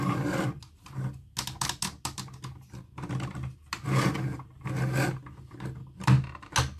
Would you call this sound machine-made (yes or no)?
no